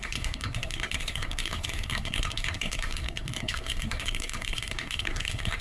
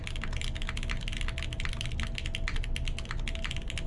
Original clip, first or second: second